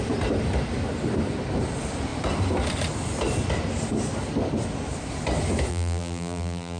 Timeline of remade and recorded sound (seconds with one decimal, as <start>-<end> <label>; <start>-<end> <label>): 0.0-5.7 recorded; 5.7-6.8 remade